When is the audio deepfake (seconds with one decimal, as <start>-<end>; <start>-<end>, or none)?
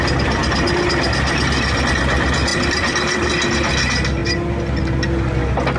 2.5-3.3